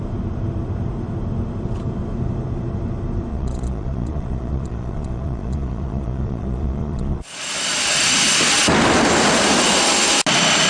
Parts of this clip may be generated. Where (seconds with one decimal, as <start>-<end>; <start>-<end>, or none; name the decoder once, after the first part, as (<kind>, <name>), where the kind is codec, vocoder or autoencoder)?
3.3-7.4 (vocoder, Vocos)